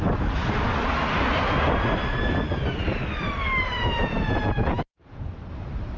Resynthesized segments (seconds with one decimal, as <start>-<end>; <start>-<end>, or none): 3.8-5.3